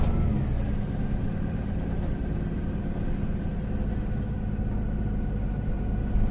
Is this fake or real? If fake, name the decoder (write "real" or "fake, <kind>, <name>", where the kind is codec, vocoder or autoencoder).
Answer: real